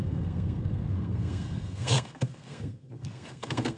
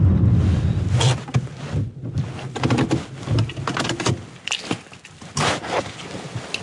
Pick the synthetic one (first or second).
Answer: first